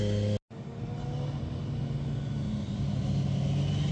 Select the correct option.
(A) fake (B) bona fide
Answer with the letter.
B